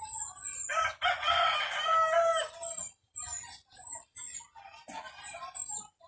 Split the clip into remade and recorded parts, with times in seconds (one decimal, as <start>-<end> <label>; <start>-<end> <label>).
0.0-6.1 recorded